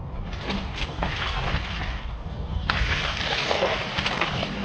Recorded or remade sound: remade